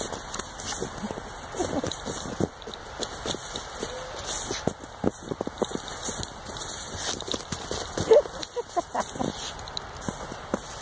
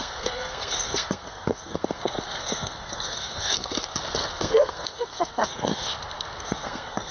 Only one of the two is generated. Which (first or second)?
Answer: second